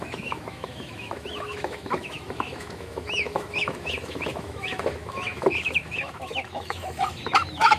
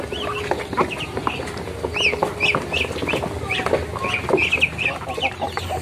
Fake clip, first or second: first